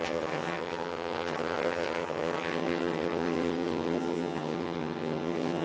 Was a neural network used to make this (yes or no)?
yes